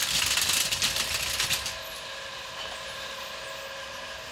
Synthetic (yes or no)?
no